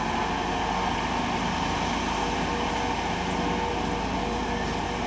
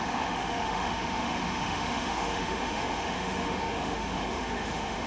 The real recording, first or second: first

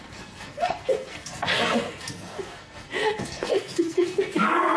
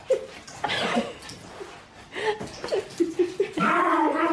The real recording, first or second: second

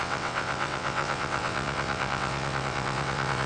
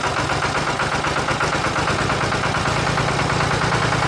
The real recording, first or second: second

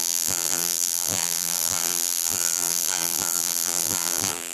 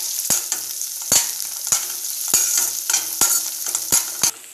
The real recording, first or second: second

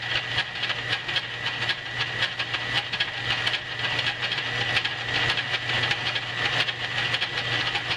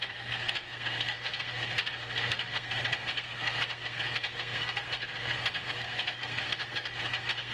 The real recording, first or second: first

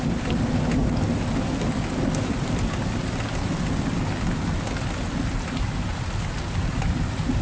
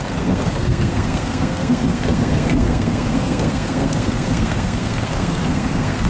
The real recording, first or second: first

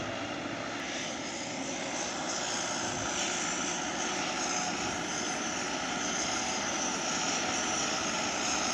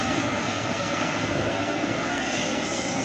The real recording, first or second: first